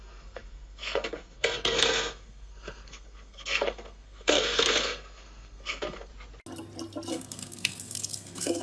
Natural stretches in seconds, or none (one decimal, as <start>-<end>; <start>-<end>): 6.1-7.1